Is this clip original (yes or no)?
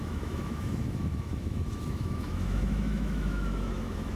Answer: no